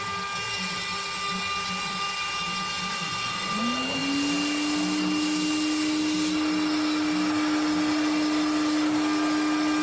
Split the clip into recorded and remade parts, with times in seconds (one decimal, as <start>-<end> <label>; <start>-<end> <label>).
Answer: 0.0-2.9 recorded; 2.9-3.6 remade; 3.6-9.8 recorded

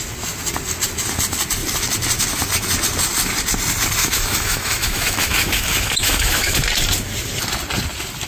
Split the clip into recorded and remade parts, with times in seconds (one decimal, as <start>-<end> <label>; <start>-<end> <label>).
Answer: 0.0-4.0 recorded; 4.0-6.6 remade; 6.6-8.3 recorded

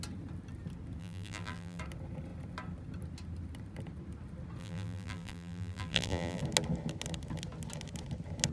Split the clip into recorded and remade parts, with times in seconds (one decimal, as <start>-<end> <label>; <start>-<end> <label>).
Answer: 0.0-1.0 recorded; 1.0-1.8 remade; 1.8-4.6 recorded; 4.6-6.4 remade; 6.4-8.5 recorded

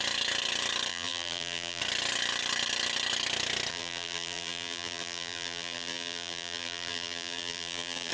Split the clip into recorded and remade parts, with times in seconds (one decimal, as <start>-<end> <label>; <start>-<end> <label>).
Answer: 0.0-0.9 recorded; 0.9-1.8 remade; 1.8-3.7 recorded; 3.7-8.1 remade